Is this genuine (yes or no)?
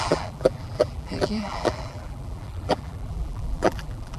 no